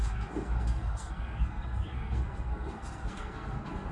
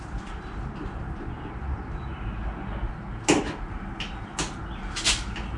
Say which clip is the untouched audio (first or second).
second